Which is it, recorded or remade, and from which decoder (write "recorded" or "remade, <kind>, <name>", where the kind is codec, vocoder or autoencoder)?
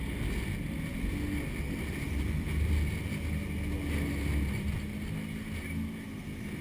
recorded